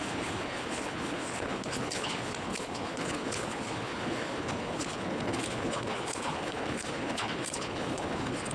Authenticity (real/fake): fake